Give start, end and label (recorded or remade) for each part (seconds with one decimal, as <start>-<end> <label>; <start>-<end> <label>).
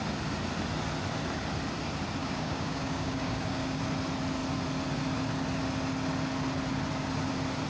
0.0-2.2 recorded; 2.2-3.8 remade; 3.8-7.7 recorded